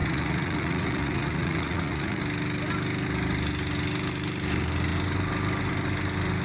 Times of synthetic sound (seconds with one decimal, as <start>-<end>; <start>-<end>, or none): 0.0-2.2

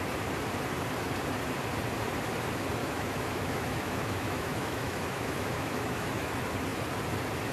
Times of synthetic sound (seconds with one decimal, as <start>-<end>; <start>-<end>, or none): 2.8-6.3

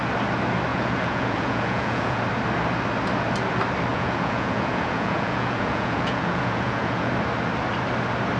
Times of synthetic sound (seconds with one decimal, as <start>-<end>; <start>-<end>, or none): 0.7-2.2; 3.9-7.1

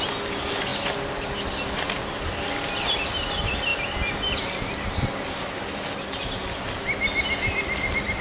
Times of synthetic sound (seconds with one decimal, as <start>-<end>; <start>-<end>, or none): none